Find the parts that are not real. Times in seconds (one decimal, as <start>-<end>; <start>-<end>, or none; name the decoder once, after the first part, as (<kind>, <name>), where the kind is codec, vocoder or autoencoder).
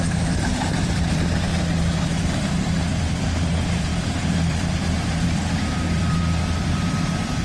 0.0-1.5 (vocoder, BigVGAN v2); 2.0-7.4